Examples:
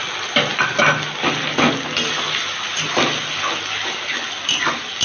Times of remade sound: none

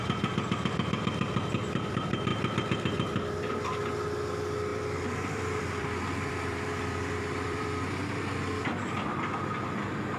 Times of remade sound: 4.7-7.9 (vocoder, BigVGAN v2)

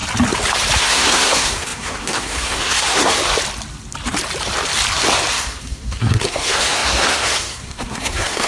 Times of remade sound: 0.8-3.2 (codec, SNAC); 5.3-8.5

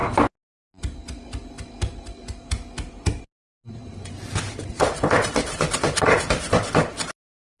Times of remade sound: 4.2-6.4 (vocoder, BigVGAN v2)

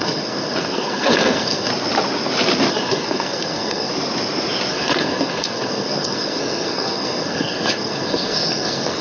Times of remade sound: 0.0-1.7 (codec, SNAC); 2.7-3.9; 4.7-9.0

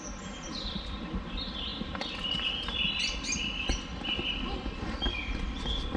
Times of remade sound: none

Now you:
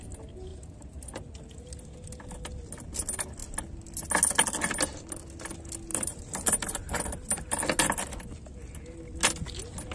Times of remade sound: 0.5-1.1 (vocoder, BigVGAN v2); 5.9-7.0

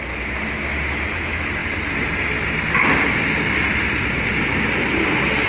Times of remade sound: none